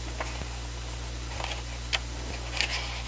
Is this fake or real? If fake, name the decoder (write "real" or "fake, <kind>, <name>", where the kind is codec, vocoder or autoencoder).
real